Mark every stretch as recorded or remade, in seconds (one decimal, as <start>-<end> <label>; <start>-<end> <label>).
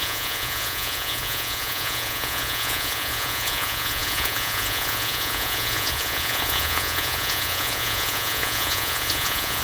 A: 0.0-9.6 remade